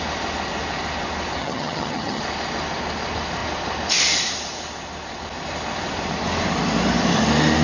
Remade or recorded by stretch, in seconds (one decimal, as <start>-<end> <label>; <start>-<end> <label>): 0.0-1.4 recorded; 1.4-2.2 remade; 2.2-7.6 recorded